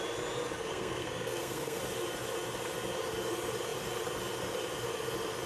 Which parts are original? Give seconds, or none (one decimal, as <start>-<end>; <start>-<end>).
0.0-0.7; 1.8-5.5